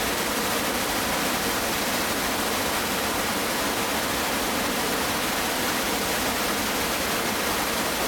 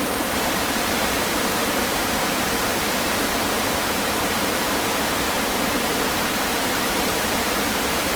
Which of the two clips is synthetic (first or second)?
second